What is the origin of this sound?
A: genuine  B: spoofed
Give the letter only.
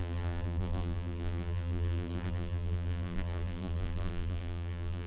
B